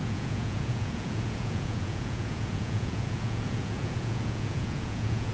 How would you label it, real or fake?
fake